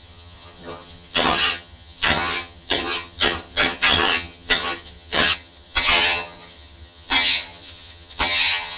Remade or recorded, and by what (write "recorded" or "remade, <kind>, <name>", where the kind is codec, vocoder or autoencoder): remade, vocoder, HiFi-GAN